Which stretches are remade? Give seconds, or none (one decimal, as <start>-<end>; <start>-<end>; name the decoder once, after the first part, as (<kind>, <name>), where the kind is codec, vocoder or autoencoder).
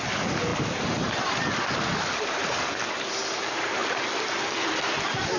none